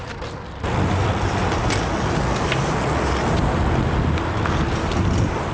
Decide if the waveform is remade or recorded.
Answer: recorded